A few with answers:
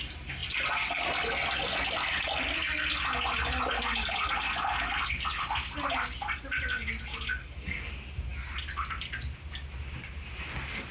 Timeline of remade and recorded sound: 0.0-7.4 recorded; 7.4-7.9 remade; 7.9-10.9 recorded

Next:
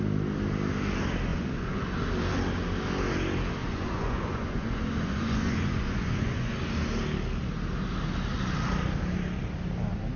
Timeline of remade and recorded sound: 0.0-1.3 recorded; 1.3-1.8 remade; 1.8-3.6 recorded; 3.6-6.6 remade; 6.6-10.2 recorded

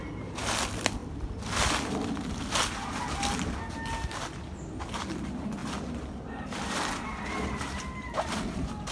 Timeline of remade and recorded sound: 0.0-8.9 recorded

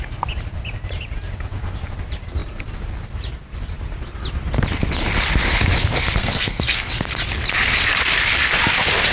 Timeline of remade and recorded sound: 0.0-6.2 recorded; 6.2-6.9 remade; 6.9-9.1 recorded

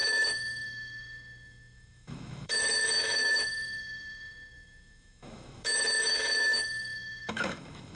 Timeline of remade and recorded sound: 0.0-8.0 remade

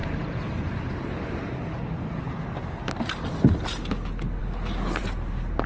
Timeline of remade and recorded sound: 0.0-5.7 recorded

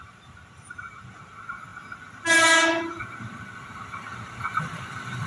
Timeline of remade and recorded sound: 0.0-5.3 recorded